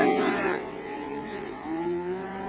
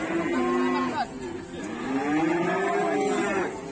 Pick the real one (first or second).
second